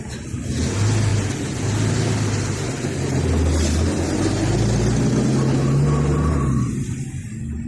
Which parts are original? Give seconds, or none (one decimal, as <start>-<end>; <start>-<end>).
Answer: 0.0-7.7